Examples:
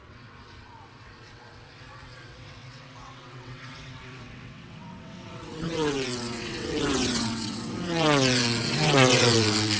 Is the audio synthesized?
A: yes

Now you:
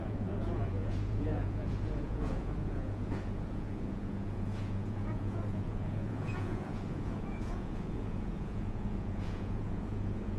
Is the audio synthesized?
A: yes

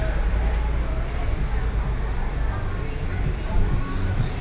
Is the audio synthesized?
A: no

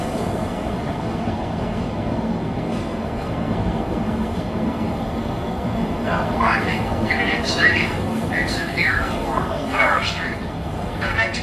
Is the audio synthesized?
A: yes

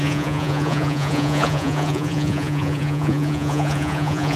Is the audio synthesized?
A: yes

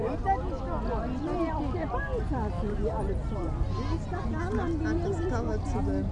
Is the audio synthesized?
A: no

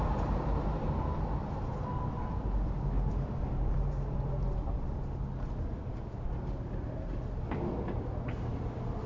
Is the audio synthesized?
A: yes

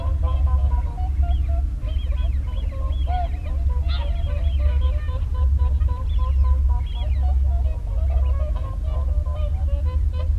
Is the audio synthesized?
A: no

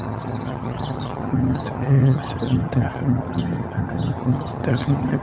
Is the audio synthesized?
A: yes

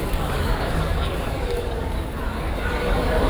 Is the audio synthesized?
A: yes